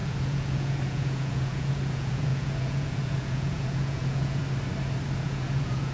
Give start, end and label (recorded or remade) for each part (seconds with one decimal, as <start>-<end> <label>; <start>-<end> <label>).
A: 0.0-4.4 remade; 4.4-5.2 recorded; 5.2-5.9 remade